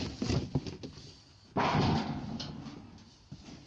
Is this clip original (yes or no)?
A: yes